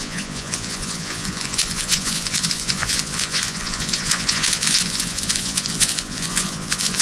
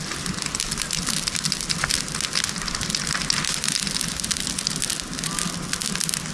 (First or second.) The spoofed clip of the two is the first